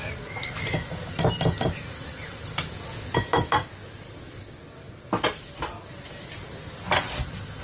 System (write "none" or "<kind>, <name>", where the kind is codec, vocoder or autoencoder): none